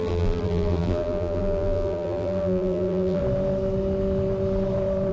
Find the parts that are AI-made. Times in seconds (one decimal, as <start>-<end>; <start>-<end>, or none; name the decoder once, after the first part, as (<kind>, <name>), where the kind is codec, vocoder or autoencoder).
0.0-3.2 (vocoder, BigVGAN v2)